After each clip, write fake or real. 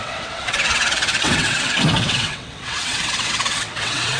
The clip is fake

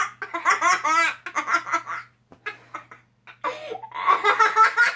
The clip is real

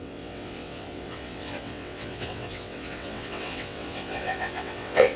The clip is fake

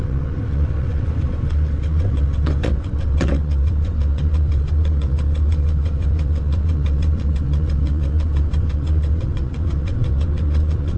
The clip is fake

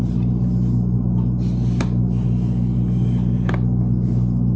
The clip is real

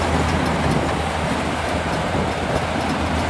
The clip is real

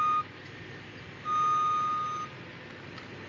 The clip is real